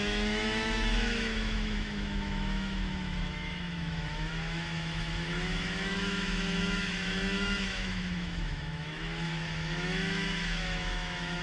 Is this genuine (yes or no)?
no